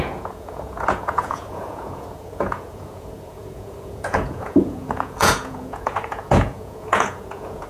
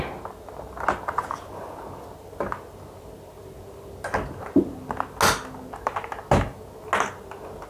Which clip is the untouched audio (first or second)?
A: second